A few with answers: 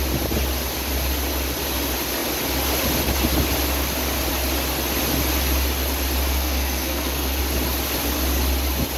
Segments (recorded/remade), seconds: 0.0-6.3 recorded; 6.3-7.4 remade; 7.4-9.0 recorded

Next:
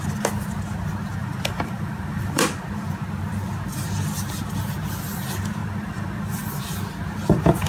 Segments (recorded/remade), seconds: 0.0-1.2 recorded; 1.2-2.4 remade; 2.4-5.6 recorded; 5.6-6.6 remade; 6.6-7.7 recorded

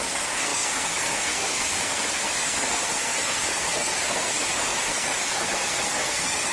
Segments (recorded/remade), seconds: 0.0-6.5 remade

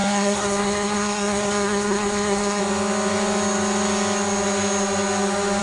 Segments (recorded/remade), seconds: 0.0-2.6 remade; 2.6-5.6 recorded

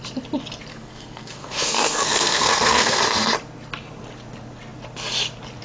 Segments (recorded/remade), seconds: 0.0-0.7 recorded; 0.7-3.0 remade; 3.0-5.6 recorded

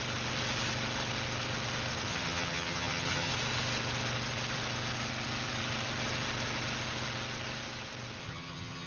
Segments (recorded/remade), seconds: 0.0-2.1 recorded; 2.1-3.3 remade; 3.3-8.2 recorded; 8.2-8.9 remade